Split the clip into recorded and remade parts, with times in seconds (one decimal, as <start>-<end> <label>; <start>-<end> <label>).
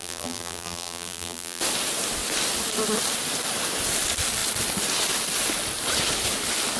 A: 0.0-1.6 remade; 1.6-6.8 recorded